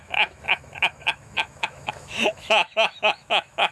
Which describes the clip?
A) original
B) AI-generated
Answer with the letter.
B